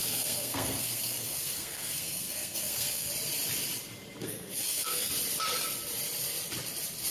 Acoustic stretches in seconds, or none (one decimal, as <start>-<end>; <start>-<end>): 3.1-4.2; 5.1-7.1